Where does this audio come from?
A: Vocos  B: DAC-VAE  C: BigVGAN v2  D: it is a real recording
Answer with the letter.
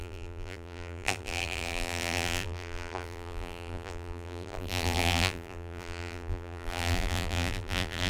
C